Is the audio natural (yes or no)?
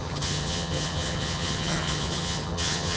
no